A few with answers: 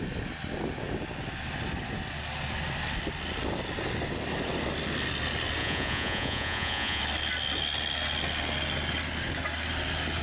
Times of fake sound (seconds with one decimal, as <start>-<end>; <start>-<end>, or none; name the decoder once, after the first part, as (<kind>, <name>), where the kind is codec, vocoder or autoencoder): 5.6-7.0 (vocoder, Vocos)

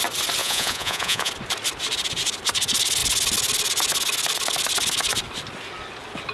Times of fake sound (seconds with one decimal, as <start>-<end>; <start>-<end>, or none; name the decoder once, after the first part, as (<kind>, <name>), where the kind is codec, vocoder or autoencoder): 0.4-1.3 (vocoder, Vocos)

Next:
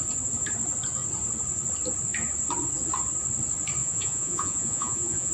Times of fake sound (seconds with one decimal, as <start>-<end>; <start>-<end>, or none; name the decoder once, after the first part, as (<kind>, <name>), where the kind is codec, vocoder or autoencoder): 3.8-5.3 (vocoder, Vocos)

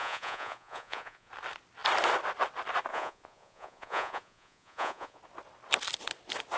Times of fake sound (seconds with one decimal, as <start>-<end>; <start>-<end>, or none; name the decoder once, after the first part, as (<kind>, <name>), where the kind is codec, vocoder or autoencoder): 0.0-1.3 (vocoder, Vocos); 2.9-5.2

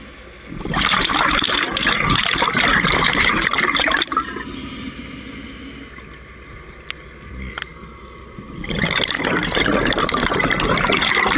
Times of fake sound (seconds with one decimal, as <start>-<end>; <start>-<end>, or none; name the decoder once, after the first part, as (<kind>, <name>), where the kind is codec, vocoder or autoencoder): none